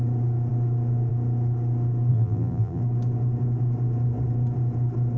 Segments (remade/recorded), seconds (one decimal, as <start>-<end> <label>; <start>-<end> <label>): 0.0-2.1 recorded; 2.1-2.8 remade; 2.8-5.2 recorded